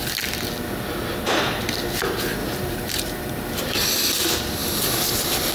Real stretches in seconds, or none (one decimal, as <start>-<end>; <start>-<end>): 0.0-2.4; 4.0-5.5